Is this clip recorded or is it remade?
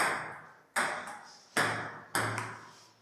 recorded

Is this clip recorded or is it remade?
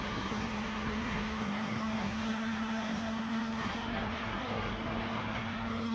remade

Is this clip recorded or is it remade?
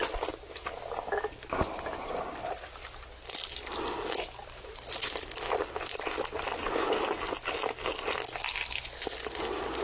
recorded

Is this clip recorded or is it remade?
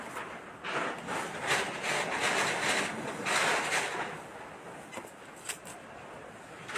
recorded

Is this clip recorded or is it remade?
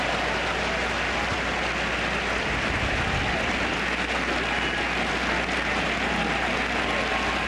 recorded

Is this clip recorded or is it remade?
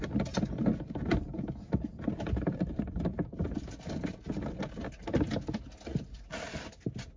recorded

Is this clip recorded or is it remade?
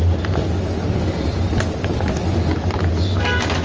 recorded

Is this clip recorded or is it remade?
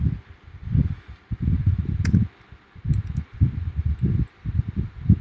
recorded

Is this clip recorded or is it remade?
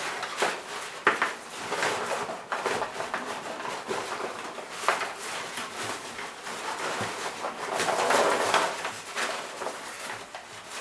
recorded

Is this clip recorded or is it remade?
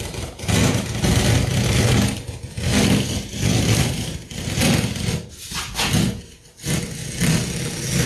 recorded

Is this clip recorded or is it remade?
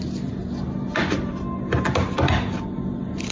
recorded